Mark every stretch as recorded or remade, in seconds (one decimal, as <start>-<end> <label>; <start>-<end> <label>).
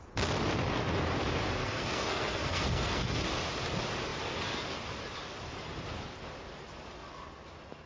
0.0-1.6 recorded; 1.6-3.2 remade; 3.2-7.9 recorded